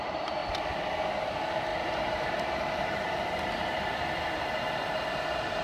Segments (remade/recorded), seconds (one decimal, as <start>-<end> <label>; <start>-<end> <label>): 0.0-0.4 remade; 0.4-1.2 recorded; 1.2-5.6 remade